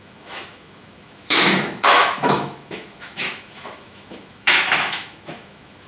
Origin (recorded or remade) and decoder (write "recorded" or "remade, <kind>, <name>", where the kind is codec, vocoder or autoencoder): remade, autoencoder, DAC-VAE